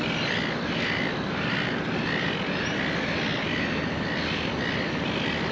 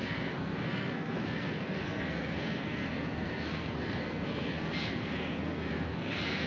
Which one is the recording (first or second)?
first